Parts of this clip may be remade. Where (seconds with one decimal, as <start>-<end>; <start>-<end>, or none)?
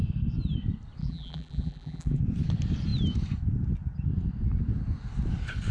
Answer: 1.0-2.2